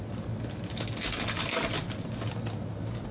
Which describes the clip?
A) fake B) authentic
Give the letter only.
B